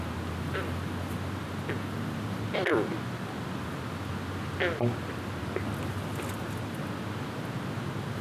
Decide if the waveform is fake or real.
real